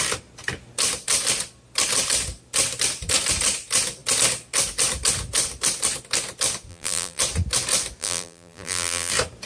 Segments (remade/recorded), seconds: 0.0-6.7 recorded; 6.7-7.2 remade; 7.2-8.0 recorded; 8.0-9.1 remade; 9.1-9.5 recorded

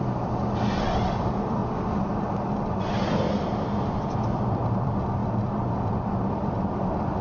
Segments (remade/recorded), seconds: 0.0-1.6 remade; 1.6-4.1 recorded; 4.1-7.2 remade

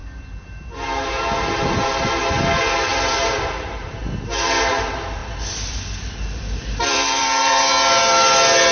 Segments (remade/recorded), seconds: 0.0-2.9 recorded; 2.9-4.0 remade; 4.0-5.2 recorded; 5.2-7.6 remade; 7.6-8.7 recorded

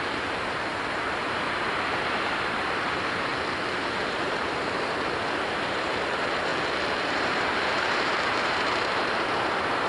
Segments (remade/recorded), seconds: 0.0-3.3 remade; 3.3-3.9 recorded; 3.9-6.5 remade; 6.5-7.0 recorded; 7.0-9.9 remade

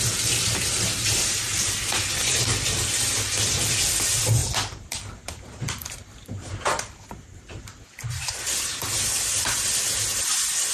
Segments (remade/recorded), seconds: 0.0-4.4 recorded; 4.4-9.0 remade; 9.0-10.7 recorded